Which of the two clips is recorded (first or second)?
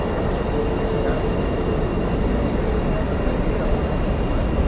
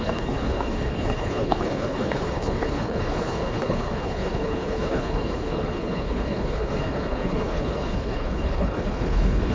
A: first